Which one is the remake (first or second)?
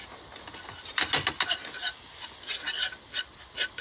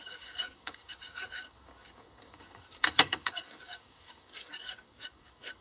second